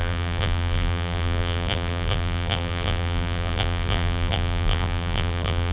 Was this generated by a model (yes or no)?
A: yes